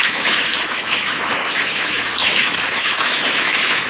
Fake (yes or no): yes